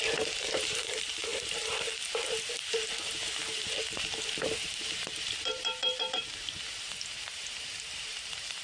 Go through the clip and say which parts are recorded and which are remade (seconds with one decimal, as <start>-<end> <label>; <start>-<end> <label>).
0.0-8.6 remade